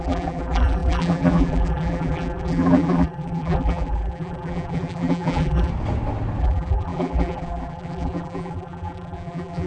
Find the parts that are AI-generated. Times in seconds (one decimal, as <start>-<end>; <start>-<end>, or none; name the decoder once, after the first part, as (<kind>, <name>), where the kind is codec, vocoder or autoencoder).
0.0-5.7 (vocoder, BigVGAN v2); 6.4-9.7